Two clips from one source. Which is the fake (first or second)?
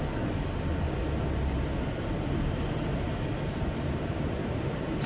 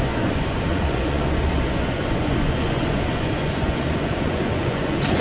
second